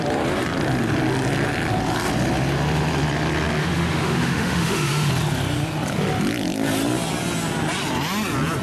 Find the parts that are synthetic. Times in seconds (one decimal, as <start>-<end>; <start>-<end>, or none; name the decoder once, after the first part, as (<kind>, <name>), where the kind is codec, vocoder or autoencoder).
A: 3.6-5.1 (autoencoder, DAC-VAE)